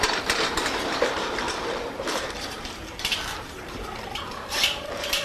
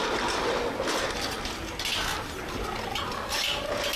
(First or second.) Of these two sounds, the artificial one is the first